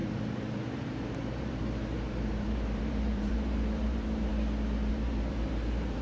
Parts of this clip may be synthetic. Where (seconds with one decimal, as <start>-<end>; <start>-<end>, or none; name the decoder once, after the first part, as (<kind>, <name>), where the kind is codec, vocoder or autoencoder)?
0.0-4.3 (vocoder, BigVGAN v2); 4.9-6.0